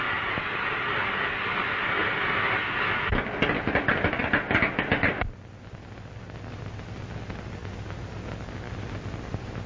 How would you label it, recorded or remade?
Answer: recorded